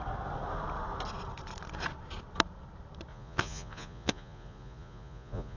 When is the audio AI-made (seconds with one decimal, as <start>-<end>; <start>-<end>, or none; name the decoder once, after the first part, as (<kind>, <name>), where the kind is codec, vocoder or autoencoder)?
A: 3.1-5.6 (vocoder, Vocos)